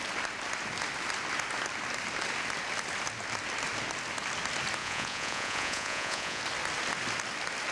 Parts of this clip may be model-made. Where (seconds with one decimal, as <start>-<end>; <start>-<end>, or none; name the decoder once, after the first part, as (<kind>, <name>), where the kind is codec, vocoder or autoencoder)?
4.8-6.4 (vocoder, Vocos)